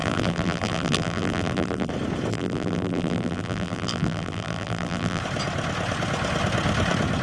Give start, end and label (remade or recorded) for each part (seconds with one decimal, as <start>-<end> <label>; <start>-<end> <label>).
0.0-1.9 remade; 1.9-2.3 recorded; 2.3-5.2 remade; 5.2-7.2 recorded